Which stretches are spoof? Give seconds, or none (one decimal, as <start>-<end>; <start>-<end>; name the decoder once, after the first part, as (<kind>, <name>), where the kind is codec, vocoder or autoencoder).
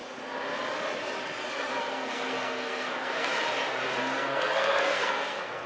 1.8-3.3 (codec, SNAC); 4.0-5.7